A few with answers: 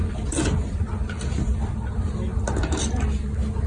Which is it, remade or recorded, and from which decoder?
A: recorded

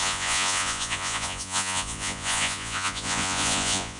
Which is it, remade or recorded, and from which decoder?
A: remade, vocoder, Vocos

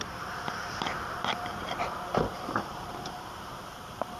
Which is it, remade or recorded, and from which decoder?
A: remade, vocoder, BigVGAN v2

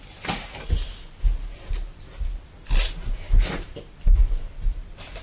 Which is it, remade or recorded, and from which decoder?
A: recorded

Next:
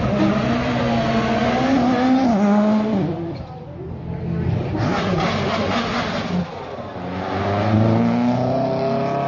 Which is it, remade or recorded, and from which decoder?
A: recorded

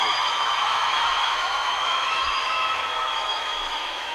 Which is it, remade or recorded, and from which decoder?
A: remade, autoencoder, DAC-VAE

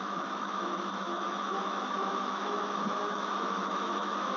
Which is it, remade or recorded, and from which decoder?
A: remade, autoencoder, DAC-VAE